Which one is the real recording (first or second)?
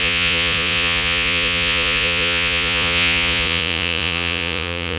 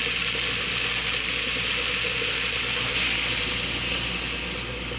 second